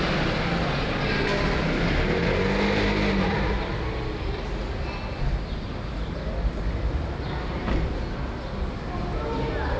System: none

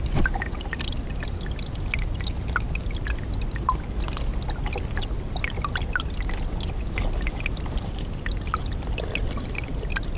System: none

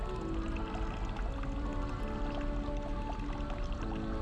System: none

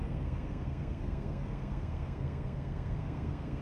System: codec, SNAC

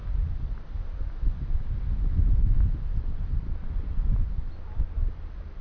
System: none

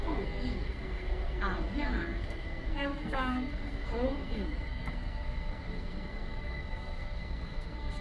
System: codec, SNAC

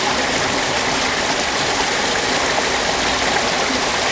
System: none